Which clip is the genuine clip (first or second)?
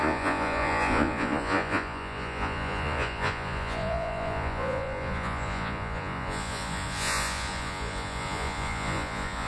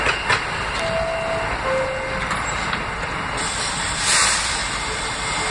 second